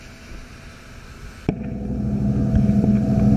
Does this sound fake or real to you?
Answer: real